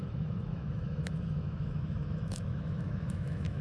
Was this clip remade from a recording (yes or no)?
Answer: yes